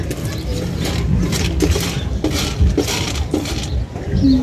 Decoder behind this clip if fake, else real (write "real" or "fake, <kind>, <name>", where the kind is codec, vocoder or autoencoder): real